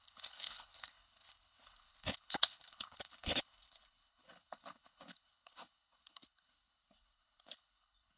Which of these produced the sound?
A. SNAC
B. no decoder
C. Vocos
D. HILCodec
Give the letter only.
D